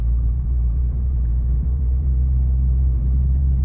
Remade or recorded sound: remade